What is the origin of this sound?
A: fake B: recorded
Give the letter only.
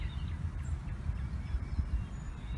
B